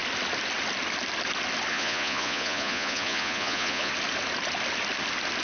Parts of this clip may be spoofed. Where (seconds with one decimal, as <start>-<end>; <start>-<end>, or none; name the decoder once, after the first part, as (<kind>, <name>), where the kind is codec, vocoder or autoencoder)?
1.7-3.9 (vocoder, Vocos)